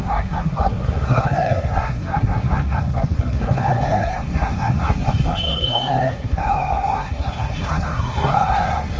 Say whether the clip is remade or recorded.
remade